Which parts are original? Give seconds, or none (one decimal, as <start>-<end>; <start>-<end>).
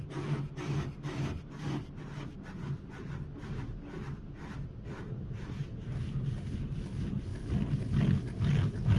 0.0-9.0